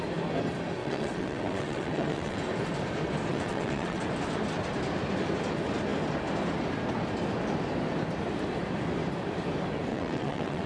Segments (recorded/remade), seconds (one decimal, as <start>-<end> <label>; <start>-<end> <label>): 0.0-0.8 recorded; 0.8-2.4 remade; 2.4-3.3 recorded; 3.3-4.0 remade; 4.0-9.9 recorded; 9.9-10.7 remade